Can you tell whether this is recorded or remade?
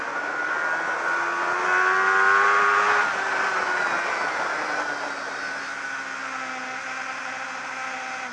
recorded